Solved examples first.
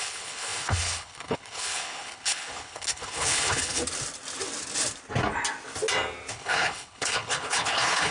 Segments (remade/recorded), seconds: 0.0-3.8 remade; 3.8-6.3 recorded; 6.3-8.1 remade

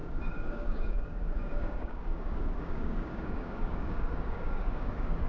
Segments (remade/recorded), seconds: 0.0-5.3 remade

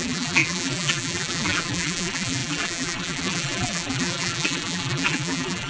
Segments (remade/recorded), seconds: 0.0-5.7 remade

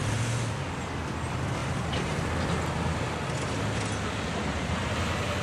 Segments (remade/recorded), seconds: 0.0-1.6 recorded; 1.6-2.3 remade; 2.3-4.4 recorded; 4.4-4.9 remade; 4.9-5.4 recorded

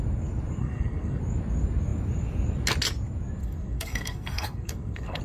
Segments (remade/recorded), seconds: 0.0-0.6 recorded; 0.6-1.2 remade; 1.2-3.4 recorded; 3.4-5.2 remade

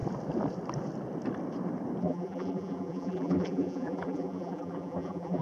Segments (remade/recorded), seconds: 0.0-2.0 recorded; 2.0-5.4 remade